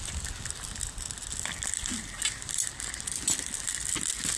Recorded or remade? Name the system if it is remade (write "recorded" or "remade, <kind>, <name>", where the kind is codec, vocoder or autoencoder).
recorded